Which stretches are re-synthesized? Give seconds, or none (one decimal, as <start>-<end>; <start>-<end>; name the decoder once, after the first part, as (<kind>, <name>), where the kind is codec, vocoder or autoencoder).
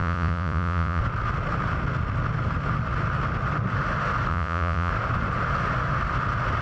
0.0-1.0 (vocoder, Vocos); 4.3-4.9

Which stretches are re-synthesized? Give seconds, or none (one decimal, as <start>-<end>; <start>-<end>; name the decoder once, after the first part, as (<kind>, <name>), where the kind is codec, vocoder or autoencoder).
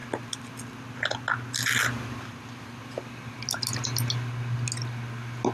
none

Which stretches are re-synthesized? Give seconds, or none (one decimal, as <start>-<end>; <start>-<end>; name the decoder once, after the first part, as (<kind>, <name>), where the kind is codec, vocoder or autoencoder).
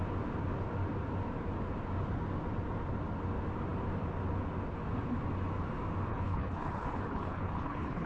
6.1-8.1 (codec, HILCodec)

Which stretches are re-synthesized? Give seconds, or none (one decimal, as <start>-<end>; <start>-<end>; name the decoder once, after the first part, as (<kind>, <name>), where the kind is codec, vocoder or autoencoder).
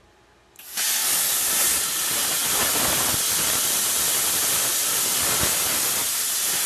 none